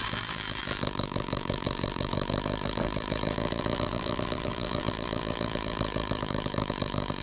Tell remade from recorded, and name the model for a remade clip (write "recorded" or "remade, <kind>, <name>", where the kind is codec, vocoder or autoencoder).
remade, vocoder, BigVGAN v2